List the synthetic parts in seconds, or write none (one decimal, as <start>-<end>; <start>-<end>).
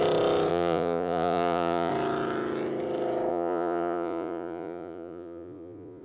0.5-1.9; 3.3-6.0